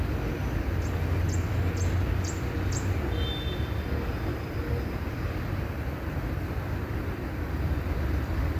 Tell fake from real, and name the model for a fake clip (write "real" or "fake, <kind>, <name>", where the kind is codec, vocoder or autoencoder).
real